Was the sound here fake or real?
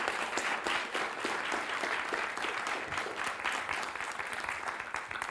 fake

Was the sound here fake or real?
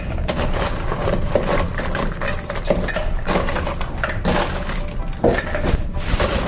real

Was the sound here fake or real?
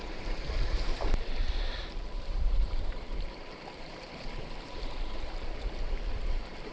fake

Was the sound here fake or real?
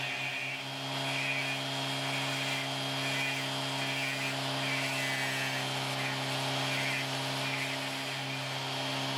real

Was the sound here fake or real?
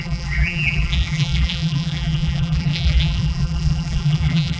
fake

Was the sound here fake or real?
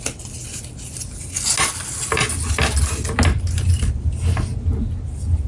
real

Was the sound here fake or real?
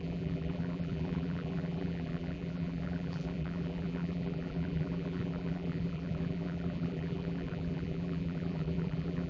fake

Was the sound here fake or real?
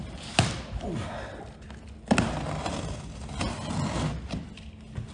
real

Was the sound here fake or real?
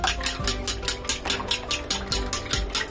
real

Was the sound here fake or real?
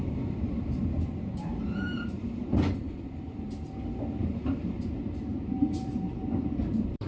fake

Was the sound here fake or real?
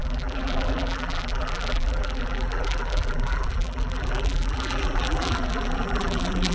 fake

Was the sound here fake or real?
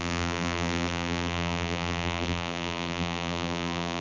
fake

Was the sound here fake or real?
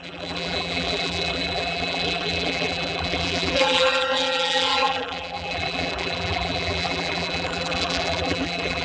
fake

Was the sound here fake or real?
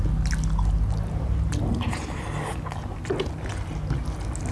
real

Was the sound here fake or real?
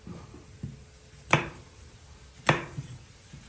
real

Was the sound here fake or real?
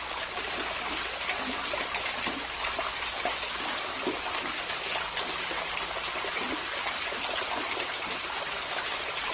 real